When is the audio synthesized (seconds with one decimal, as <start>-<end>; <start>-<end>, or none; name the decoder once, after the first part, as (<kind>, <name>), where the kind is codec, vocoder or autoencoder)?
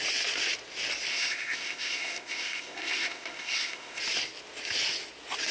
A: 1.1-4.0 (codec, ZipCodec)